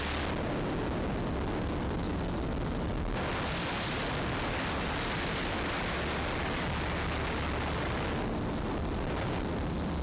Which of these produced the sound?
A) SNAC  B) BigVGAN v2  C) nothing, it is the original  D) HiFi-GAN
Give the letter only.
C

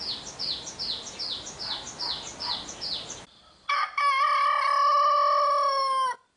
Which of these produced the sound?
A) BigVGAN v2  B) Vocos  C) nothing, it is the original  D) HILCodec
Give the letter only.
C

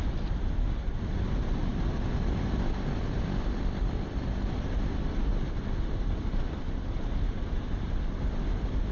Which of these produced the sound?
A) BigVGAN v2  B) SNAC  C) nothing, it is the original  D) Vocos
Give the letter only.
C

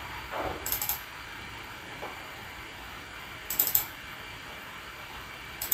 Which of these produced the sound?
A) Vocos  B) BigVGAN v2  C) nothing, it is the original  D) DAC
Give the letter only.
B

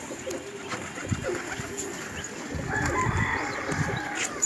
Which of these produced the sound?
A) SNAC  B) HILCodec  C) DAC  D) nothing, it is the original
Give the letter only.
D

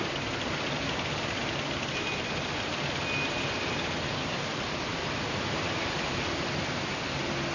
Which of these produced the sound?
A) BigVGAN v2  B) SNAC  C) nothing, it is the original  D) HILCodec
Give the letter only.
C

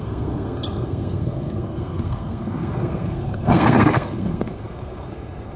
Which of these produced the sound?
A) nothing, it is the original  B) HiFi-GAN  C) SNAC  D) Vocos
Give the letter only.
C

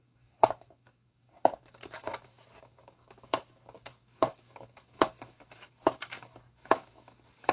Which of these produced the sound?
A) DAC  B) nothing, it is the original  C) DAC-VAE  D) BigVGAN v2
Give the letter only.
A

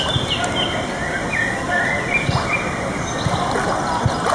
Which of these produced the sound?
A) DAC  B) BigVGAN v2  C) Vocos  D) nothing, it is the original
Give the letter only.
D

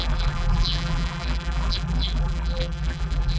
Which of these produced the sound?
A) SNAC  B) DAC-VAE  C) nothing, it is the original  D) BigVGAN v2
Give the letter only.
D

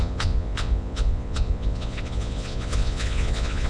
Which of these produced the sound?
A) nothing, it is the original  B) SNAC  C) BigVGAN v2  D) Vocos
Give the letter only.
D